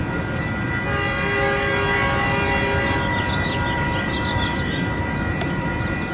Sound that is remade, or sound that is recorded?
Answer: recorded